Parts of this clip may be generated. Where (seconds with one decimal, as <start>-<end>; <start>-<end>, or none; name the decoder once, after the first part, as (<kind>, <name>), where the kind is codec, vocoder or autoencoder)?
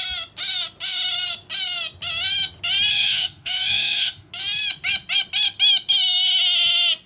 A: 2.9-4.3 (autoencoder, DAC-VAE)